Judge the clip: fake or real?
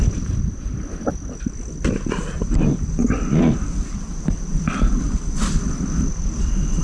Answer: real